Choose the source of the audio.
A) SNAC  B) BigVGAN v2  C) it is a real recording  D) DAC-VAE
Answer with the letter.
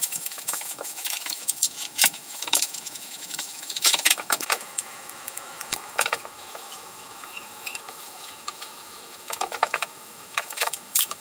D